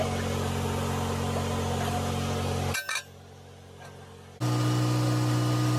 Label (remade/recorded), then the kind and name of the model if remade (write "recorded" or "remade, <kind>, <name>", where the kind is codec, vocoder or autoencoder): recorded